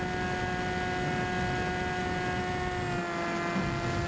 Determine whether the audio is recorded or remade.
recorded